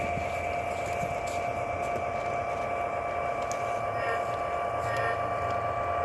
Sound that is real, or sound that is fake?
real